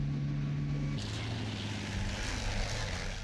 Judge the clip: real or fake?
real